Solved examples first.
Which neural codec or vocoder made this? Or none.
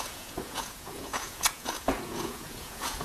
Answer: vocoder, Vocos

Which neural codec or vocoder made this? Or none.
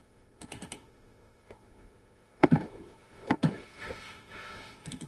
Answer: autoencoder, DAC-VAE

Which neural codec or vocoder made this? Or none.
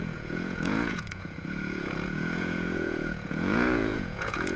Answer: vocoder, Vocos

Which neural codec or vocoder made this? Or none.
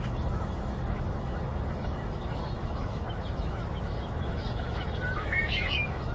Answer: autoencoder, DAC-VAE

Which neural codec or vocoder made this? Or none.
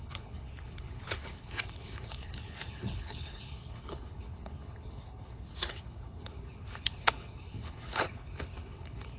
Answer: codec, HILCodec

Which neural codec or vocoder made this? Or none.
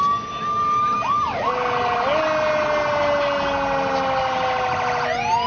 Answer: none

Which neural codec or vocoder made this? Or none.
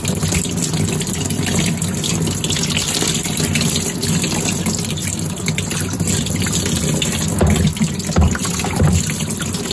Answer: none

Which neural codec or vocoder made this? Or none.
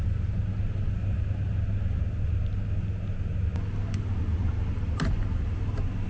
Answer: none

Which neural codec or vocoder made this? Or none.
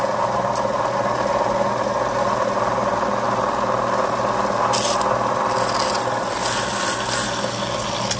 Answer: none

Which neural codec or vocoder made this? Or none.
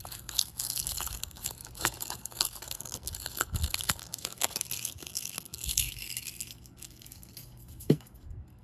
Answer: codec, SNAC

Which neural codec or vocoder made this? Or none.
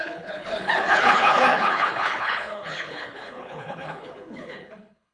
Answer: codec, HILCodec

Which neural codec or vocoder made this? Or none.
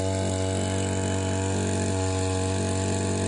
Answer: none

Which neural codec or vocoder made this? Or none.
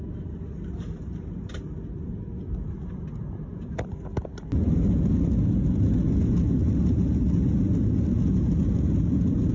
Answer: none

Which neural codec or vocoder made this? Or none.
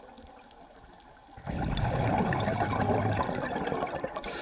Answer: none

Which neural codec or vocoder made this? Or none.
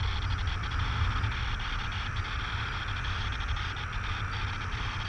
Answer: none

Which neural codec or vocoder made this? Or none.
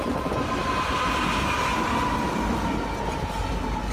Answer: none